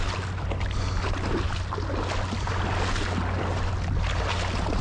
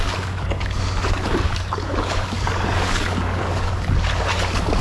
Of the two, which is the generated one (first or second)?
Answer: second